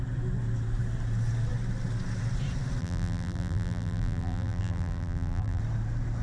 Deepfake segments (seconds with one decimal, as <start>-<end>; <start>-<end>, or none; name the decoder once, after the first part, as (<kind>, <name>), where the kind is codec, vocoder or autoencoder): 2.8-5.6 (vocoder, BigVGAN v2)